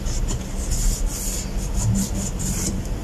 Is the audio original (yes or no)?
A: yes